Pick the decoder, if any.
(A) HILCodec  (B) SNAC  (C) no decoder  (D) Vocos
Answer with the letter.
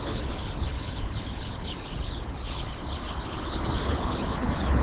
A